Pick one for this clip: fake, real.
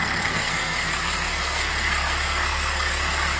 fake